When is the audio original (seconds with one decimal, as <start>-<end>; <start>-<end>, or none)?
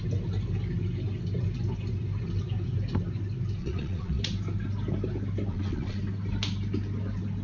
0.0-3.6; 4.2-5.5; 6.0-7.4